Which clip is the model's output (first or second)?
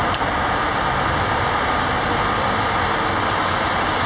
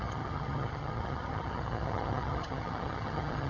second